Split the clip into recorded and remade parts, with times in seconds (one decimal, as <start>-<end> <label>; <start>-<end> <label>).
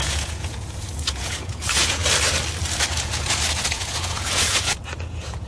0.0-2.0 remade; 2.0-2.9 recorded; 2.9-5.5 remade